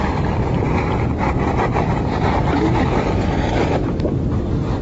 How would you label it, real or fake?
fake